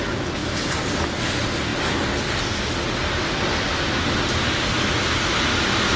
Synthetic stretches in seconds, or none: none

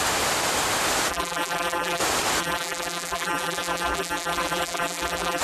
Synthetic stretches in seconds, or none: 1.1-2.0; 2.4-5.4

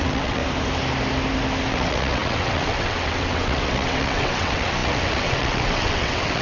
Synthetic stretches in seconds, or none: 0.0-0.4; 1.7-6.4

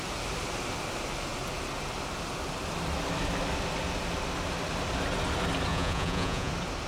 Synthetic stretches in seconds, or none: 5.7-6.5